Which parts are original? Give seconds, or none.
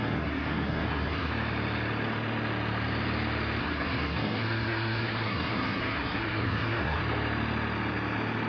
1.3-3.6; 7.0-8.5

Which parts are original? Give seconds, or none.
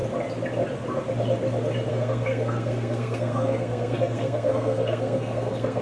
0.0-1.9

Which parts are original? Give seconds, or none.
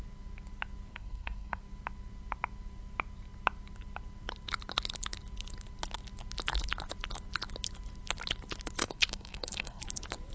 0.0-0.9; 1.6-8.8; 9.8-10.3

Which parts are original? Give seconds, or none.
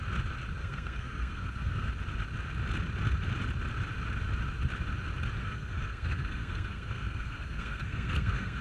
0.0-0.6; 1.9-5.4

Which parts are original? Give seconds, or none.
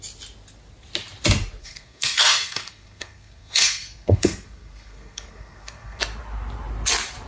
0.0-1.6; 6.0-7.3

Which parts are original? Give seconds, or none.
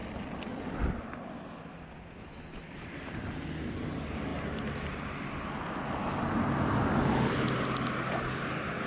0.0-8.9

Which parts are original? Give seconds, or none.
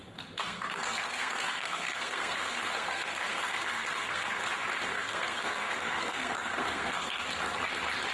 0.0-0.4; 4.4-4.9; 7.2-8.1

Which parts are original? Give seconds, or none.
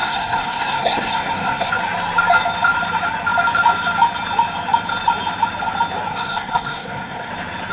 1.7-6.1; 7.3-7.7